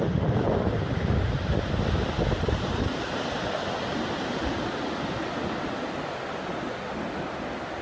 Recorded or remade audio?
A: recorded